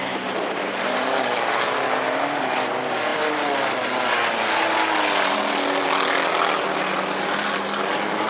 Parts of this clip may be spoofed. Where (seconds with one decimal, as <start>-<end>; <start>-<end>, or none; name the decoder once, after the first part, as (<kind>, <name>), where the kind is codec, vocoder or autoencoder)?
none